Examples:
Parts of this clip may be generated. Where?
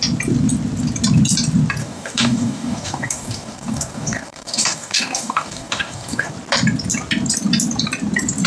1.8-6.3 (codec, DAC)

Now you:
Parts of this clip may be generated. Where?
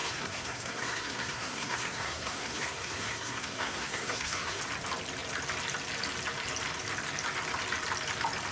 0.0-4.6 (codec, SNAC)